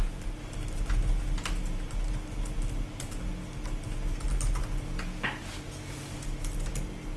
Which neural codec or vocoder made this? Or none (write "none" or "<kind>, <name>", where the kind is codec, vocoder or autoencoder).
none